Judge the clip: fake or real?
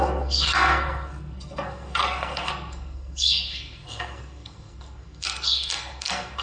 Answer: fake